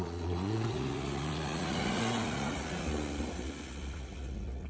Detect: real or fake fake